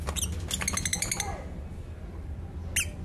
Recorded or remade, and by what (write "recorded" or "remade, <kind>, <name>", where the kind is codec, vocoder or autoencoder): recorded